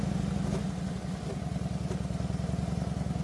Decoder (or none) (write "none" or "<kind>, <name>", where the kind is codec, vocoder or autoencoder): none